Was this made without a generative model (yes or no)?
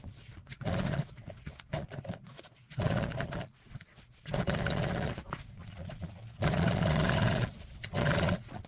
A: no